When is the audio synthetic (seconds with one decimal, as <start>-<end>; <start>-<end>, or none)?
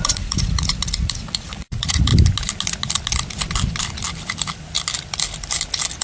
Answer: 0.0-2.1